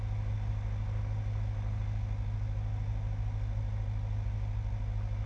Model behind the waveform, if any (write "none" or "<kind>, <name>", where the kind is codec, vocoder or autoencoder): none